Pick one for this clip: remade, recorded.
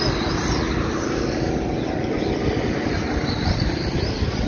recorded